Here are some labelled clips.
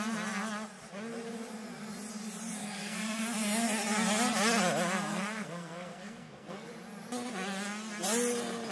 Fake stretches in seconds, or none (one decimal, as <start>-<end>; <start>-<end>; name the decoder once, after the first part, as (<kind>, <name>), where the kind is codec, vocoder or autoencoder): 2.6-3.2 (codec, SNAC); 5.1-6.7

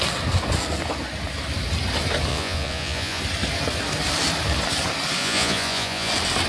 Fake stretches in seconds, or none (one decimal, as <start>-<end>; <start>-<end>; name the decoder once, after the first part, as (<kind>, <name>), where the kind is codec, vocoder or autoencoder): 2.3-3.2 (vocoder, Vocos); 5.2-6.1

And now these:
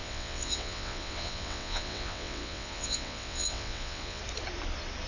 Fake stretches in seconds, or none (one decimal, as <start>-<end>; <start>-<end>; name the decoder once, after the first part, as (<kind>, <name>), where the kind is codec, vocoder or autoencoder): 0.0-4.2 (vocoder, WaveNeXt)

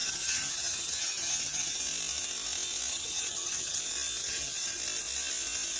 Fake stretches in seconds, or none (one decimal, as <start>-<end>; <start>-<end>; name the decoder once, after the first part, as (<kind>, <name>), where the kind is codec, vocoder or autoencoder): 0.0-1.8 (vocoder, HiFi-GAN); 2.9-3.8; 4.2-4.8

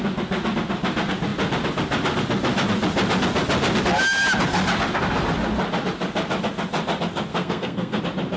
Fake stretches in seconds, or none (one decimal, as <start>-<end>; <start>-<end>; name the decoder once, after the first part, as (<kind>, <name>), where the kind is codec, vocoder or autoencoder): 7.3-8.0 (codec, SNAC)

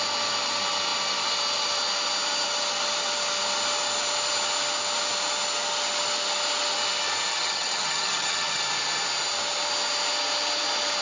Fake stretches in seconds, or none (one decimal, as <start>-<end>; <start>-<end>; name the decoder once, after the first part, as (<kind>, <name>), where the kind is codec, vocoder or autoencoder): 7.3-8.6 (vocoder, HiFi-GAN)